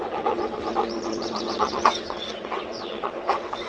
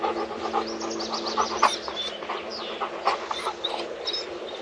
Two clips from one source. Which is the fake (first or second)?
first